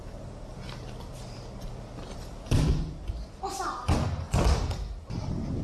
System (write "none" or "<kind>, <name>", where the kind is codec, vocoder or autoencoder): none